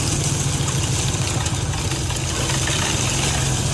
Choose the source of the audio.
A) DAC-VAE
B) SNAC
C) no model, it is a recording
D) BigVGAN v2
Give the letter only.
C